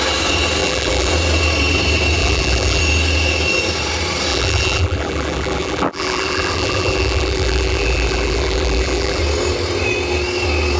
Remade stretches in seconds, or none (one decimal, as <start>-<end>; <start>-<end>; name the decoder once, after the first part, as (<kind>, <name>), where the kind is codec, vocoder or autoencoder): 0.6-1.1 (vocoder, BigVGAN v2); 2.2-2.8; 4.3-9.2